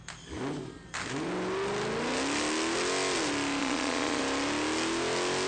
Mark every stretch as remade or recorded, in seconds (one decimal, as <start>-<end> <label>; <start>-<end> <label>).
0.0-3.6 recorded; 3.6-4.2 remade; 4.2-5.5 recorded